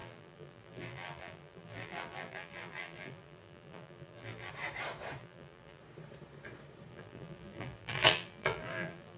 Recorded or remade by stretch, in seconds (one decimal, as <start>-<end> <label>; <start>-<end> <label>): 0.0-4.5 remade; 4.5-5.2 recorded; 5.2-5.8 remade; 5.8-6.9 recorded; 6.9-9.2 remade

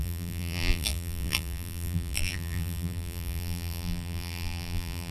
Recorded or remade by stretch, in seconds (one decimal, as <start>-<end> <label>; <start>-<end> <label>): 0.0-5.1 remade